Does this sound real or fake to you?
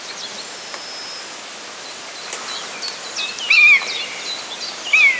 real